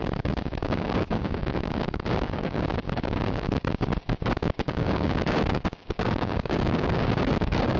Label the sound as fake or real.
fake